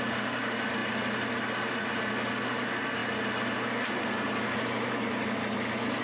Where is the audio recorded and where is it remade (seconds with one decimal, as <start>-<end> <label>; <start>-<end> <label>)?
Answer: 0.0-6.0 recorded